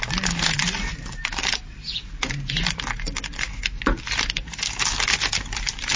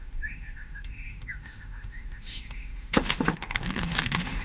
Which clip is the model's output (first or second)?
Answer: second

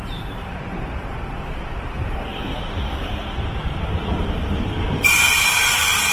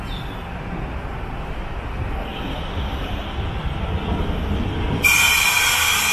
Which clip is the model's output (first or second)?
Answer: first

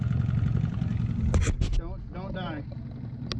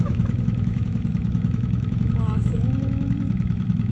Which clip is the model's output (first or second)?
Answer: second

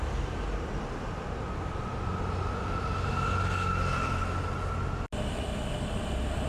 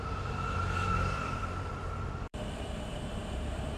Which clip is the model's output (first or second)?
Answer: second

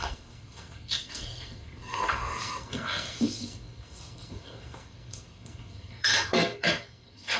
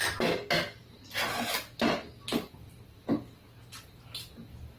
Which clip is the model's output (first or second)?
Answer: first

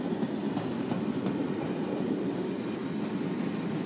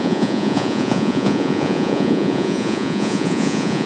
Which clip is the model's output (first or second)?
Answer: second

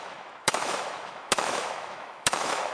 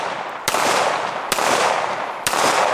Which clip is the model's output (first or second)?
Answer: first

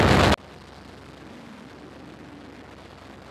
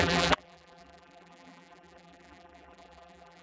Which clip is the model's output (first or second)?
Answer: second